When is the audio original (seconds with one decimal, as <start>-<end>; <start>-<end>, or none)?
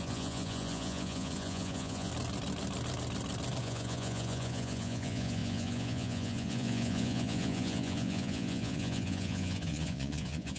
2.1-3.6